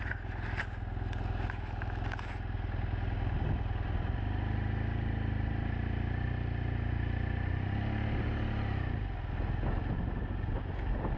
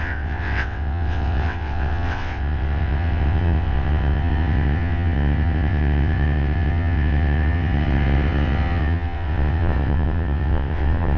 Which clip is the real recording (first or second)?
first